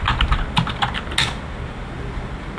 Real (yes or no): yes